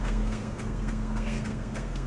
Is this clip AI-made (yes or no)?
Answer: yes